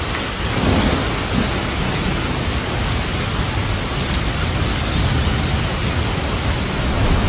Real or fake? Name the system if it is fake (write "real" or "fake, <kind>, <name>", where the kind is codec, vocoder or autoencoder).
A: real